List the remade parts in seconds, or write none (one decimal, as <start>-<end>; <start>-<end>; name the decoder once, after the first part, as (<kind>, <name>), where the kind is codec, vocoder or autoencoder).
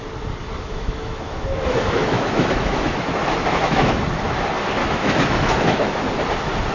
0.4-4.0 (autoencoder, DAC-VAE); 4.8-6.1